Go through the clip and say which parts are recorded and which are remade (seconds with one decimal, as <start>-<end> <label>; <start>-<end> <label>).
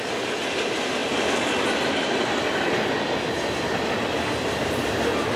0.0-5.4 recorded